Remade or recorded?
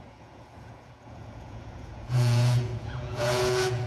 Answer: remade